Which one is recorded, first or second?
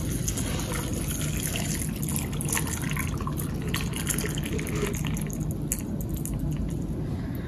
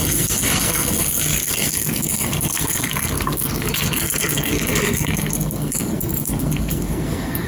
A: first